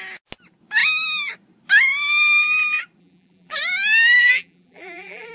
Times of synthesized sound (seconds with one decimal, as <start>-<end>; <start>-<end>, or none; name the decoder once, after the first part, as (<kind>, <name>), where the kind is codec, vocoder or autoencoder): 0.8-1.3 (vocoder, BigVGAN v2); 3.0-3.6; 4.2-5.3